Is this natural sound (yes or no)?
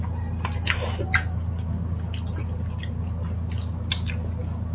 yes